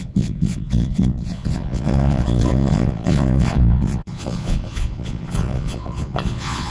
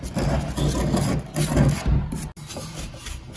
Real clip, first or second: second